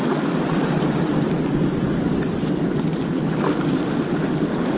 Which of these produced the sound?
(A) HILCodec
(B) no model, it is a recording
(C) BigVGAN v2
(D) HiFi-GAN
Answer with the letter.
B